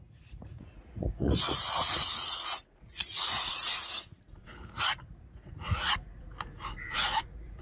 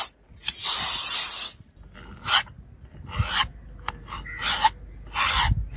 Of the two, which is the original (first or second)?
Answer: second